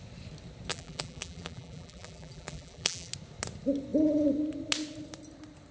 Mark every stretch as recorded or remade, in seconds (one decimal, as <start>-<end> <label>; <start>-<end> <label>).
0.0-0.7 recorded; 0.7-3.1 remade; 3.1-5.7 recorded